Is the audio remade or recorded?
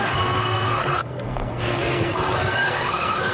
remade